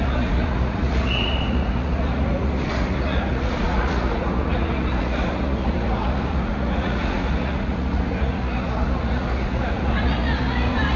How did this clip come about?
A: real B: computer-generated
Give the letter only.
B